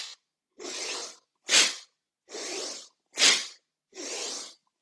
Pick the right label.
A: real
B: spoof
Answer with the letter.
A